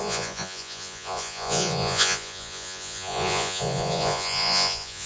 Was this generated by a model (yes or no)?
yes